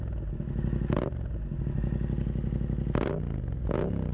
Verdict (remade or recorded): recorded